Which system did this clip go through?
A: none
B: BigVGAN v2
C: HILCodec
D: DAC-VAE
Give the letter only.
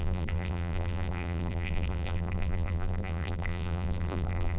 B